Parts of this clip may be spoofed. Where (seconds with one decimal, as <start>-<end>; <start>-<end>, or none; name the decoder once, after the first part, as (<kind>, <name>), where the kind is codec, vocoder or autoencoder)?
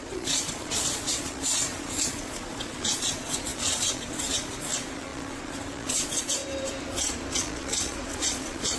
0.0-6.4 (vocoder, Vocos); 7.3-8.8